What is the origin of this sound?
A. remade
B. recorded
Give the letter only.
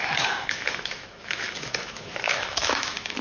A